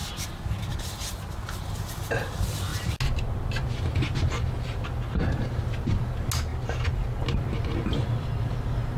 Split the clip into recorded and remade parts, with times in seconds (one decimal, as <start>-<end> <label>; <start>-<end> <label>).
0.0-9.0 recorded